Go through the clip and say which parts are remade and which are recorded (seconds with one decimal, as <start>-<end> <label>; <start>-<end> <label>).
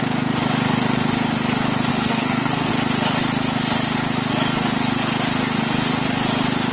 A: 0.0-1.9 recorded; 1.9-2.7 remade; 2.7-6.7 recorded